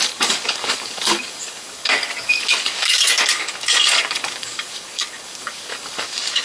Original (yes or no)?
no